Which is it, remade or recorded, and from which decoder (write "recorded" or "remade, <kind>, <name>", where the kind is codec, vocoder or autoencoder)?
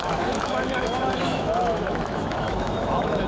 remade, autoencoder, DAC-VAE